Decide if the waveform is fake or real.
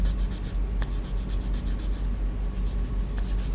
real